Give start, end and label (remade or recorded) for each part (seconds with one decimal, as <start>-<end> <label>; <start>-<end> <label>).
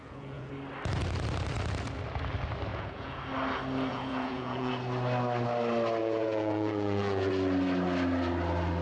0.0-0.5 remade; 0.5-2.7 recorded; 2.7-3.2 remade; 3.2-3.9 recorded; 3.9-4.7 remade; 4.7-6.0 recorded; 6.0-7.3 remade; 7.3-8.8 recorded